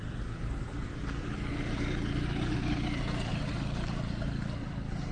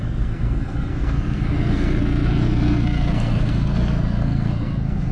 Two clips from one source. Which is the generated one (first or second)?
second